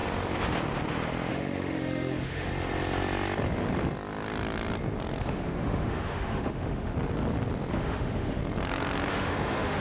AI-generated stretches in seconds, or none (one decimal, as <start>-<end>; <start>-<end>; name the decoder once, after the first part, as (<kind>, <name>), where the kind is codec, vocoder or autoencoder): 1.3-2.5 (autoencoder, DAC-VAE); 5.2-6.9; 7.7-8.4; 9.1-9.8